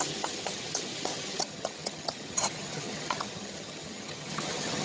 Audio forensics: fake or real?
fake